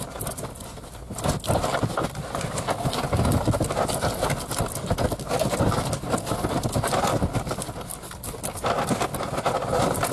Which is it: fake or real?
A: real